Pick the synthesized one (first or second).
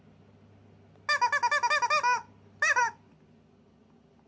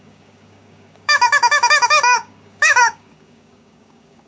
second